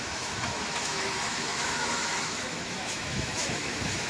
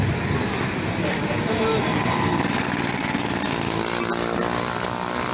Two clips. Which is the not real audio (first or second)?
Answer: first